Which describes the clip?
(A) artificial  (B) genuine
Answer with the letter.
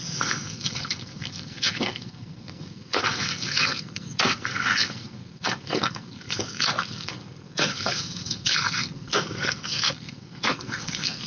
A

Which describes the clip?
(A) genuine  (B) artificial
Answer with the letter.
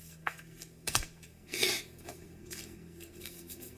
B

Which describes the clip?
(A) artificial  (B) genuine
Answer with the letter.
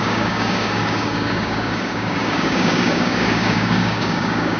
A